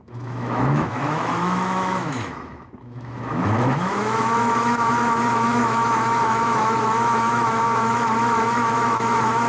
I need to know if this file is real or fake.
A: fake